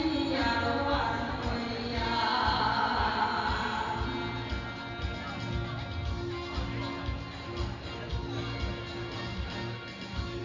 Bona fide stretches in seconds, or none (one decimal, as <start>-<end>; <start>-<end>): 0.0-10.4